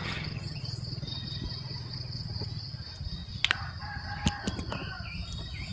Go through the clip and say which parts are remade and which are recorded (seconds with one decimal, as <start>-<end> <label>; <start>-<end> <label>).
0.0-0.6 remade; 0.6-5.7 recorded